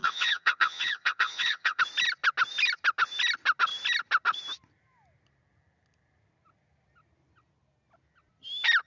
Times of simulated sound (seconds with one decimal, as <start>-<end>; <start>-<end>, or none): 0.0-1.8